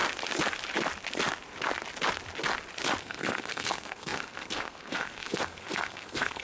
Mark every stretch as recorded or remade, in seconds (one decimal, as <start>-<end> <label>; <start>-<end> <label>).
0.0-3.0 recorded; 3.0-6.4 remade